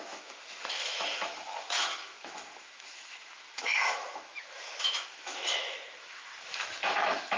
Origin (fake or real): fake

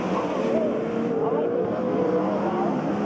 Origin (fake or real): real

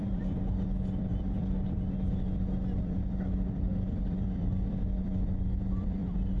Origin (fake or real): fake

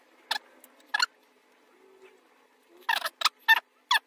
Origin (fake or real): real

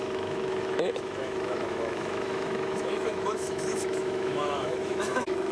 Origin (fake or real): fake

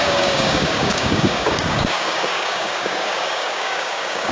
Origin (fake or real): fake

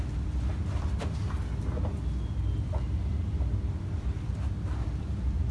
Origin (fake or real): real